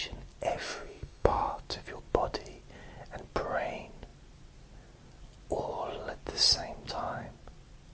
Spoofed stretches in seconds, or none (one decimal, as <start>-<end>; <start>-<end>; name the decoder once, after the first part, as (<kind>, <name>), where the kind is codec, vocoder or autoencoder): 0.6-1.6 (autoencoder, DAC-VAE)